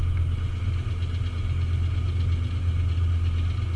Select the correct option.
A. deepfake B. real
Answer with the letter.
B